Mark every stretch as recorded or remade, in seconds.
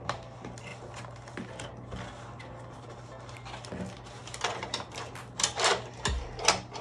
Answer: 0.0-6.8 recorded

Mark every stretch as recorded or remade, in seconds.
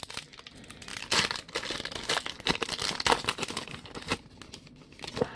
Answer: 0.0-5.4 recorded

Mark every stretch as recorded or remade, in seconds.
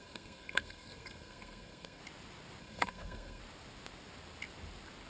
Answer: 0.0-2.0 remade; 2.0-2.6 recorded; 2.6-3.4 remade; 3.4-5.1 recorded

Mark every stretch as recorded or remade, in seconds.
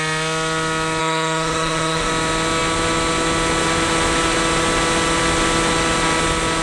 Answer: 0.0-1.0 recorded; 1.0-2.1 remade; 2.1-6.6 recorded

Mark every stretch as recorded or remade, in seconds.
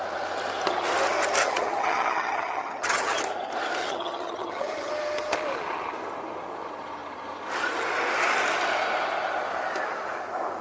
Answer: 0.0-1.4 recorded; 1.4-3.2 remade; 3.2-3.8 recorded; 3.8-4.9 remade; 4.9-10.6 recorded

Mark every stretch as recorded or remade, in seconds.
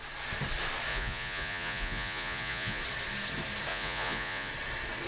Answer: 0.0-0.9 recorded; 0.9-2.8 remade; 2.8-3.7 recorded; 3.7-4.5 remade; 4.5-5.1 recorded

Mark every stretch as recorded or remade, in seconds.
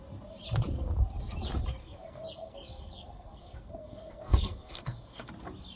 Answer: 0.0-1.8 recorded; 1.8-5.3 remade; 5.3-5.8 recorded